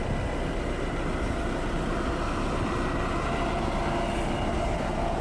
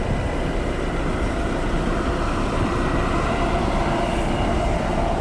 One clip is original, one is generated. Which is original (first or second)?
first